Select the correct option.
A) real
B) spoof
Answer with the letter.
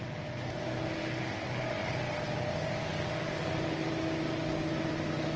A